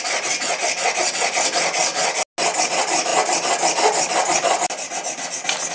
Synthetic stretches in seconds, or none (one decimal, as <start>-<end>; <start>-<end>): none